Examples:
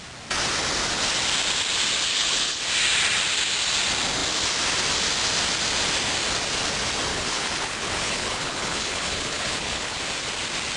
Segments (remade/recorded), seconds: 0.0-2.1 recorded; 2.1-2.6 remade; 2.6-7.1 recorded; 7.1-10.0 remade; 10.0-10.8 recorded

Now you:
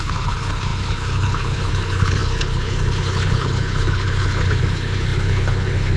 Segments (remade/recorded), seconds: 0.0-6.0 remade

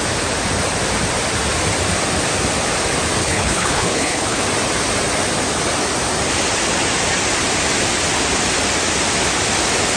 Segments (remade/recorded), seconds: 0.0-3.2 recorded; 3.2-4.4 remade; 4.4-10.0 recorded